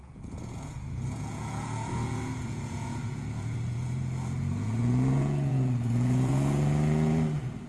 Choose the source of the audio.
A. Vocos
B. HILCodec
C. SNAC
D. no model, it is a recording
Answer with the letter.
A